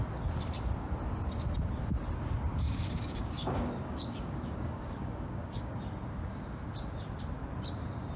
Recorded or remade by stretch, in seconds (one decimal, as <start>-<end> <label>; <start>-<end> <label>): 0.0-2.5 recorded; 2.5-5.8 remade; 5.8-8.2 recorded

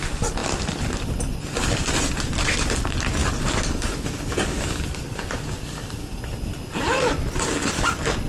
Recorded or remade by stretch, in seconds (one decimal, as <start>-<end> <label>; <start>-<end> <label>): 0.0-3.2 recorded; 3.2-6.2 remade; 6.2-8.3 recorded